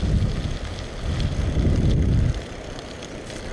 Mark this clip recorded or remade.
recorded